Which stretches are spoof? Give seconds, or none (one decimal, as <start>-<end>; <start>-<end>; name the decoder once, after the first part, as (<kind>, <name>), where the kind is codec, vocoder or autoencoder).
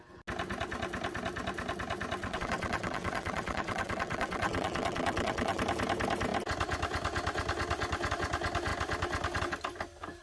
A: 2.2-5.6 (vocoder, WaveNeXt)